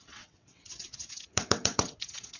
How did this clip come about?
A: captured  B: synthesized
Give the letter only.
B